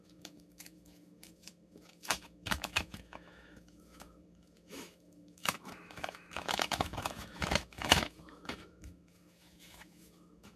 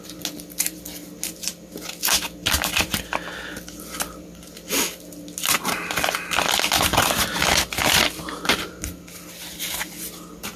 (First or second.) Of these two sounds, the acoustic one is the second